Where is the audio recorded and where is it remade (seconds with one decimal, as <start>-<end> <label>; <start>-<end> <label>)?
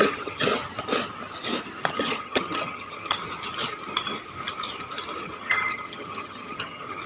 0.0-0.5 remade; 0.5-1.9 recorded; 1.9-3.2 remade; 3.2-5.2 recorded; 5.2-7.1 remade